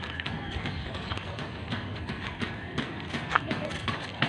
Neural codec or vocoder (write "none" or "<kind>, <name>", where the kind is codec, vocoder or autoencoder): codec, SNAC